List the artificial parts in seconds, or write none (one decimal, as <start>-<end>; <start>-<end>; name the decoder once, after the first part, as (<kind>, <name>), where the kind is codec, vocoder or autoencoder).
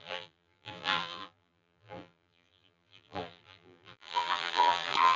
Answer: 0.0-5.2 (vocoder, BigVGAN v2)